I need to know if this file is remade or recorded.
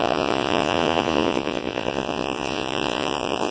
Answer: remade